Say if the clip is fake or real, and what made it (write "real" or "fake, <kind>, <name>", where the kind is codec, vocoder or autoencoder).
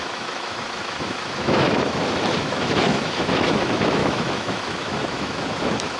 fake, autoencoder, DAC-VAE